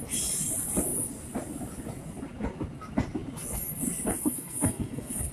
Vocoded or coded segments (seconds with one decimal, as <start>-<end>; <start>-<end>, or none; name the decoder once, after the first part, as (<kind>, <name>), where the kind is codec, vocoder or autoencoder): 4.1-5.3 (codec, SNAC)